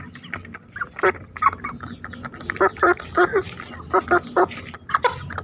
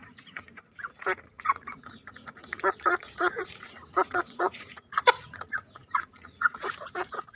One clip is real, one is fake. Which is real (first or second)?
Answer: first